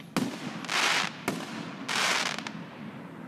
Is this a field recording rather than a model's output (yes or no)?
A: yes